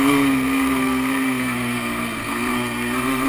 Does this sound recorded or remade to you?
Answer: remade